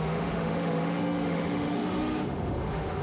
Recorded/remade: remade